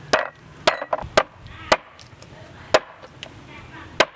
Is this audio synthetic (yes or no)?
no